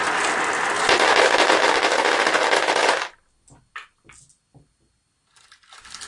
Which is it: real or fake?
real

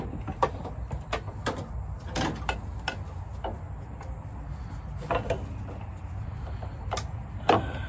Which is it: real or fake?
real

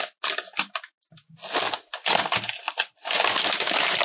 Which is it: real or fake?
real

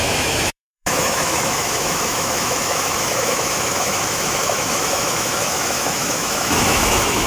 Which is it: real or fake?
fake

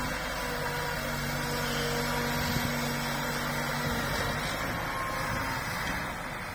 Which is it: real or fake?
real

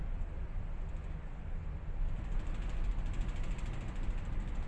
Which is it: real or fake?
real